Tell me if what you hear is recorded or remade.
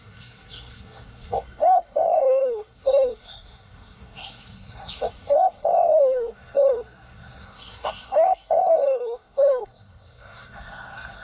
remade